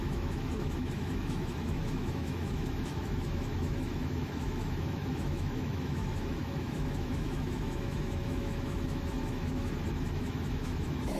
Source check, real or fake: fake